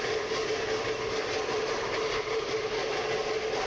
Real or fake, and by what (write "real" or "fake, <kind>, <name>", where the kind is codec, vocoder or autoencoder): real